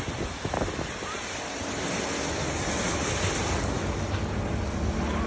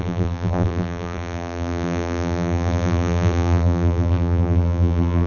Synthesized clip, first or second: second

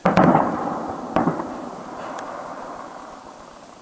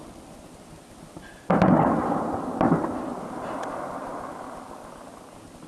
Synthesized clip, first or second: first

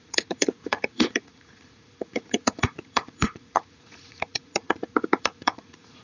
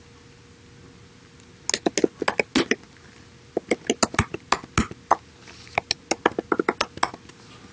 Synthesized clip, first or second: first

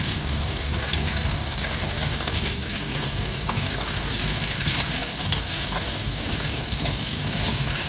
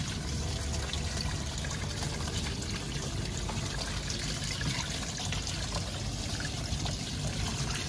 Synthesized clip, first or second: first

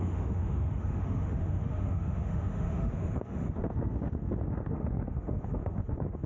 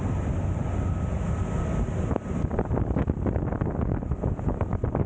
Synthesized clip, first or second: first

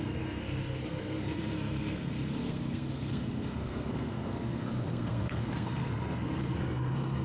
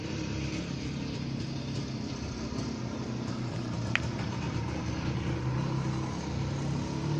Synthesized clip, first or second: first